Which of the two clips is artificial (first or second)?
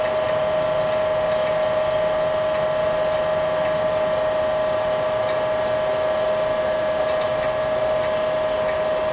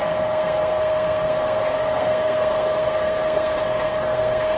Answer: second